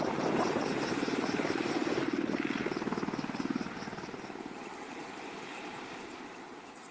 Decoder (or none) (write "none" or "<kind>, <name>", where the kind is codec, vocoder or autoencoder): none